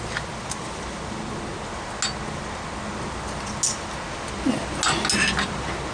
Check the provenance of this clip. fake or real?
real